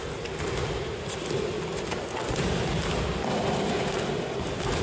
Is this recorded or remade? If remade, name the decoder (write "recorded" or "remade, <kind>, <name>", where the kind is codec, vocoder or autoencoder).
recorded